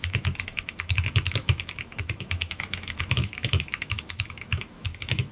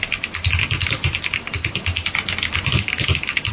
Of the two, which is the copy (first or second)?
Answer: first